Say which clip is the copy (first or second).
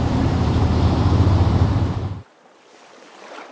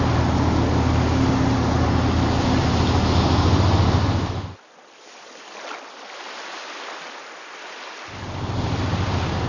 first